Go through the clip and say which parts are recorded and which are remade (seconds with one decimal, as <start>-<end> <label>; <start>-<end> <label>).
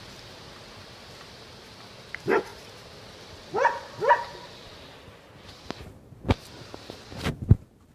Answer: 0.0-7.9 recorded